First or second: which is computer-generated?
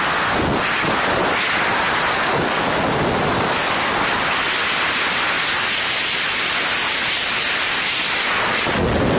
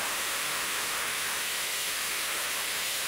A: second